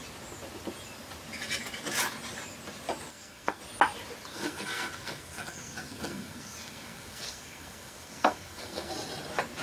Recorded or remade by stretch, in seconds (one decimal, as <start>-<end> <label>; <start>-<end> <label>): 0.0-3.1 recorded; 3.1-3.6 remade; 3.6-4.3 recorded; 4.3-8.9 remade; 8.9-9.6 recorded